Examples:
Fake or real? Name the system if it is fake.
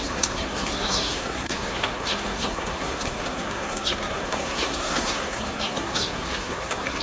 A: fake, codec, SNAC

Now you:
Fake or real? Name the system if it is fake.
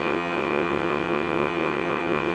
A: fake, vocoder, WaveNeXt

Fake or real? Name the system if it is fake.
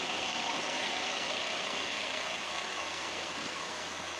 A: fake, codec, SNAC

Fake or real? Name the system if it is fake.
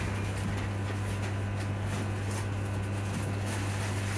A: real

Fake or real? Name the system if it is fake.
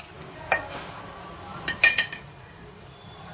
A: fake, vocoder, BigVGAN v2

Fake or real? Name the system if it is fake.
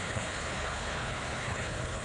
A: fake, codec, HILCodec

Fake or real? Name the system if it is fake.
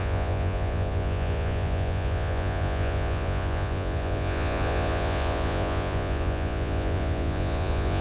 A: fake, vocoder, Vocos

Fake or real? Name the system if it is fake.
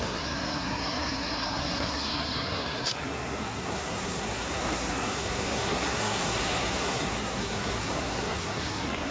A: fake, codec, SNAC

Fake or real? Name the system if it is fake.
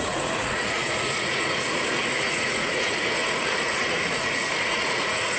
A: fake, vocoder, Vocos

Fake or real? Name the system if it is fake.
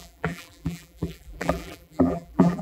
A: fake, vocoder, BigVGAN v2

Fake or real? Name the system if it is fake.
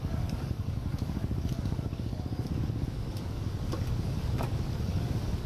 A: fake, codec, DAC